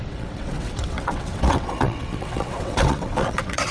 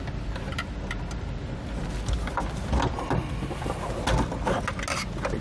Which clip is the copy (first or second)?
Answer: first